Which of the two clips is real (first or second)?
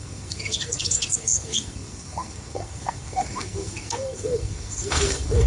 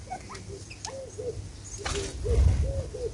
second